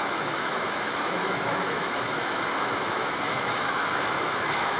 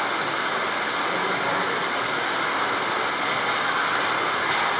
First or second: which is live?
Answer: second